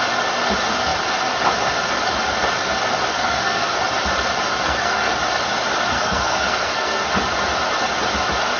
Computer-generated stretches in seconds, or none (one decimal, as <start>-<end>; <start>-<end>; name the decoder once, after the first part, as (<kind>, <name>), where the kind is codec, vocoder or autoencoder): 3.1-3.7 (codec, SNAC); 4.5-5.1; 5.9-7.1